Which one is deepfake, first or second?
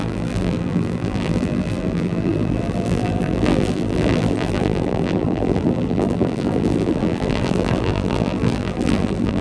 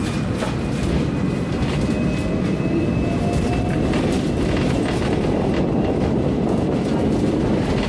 first